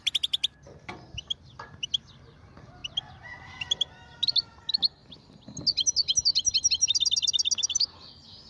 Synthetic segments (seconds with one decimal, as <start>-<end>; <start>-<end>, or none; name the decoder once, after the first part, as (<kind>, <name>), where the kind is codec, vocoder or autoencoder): none